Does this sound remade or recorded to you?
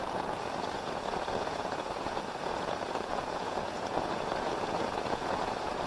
remade